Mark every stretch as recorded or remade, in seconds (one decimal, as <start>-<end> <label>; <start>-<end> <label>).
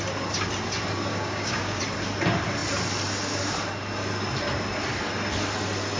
0.0-1.1 recorded; 1.1-1.8 remade; 1.8-6.0 recorded